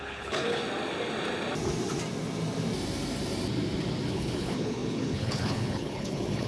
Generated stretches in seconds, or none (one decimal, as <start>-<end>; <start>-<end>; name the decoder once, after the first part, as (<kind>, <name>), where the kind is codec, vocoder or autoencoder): 0.0-0.6 (codec, HILCodec); 4.1-6.5